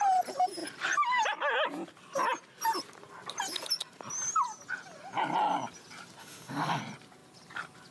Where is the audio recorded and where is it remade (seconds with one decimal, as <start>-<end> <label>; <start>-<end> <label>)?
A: 0.0-6.2 recorded; 6.2-6.8 remade; 6.8-7.9 recorded